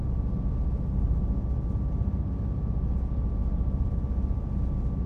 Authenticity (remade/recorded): recorded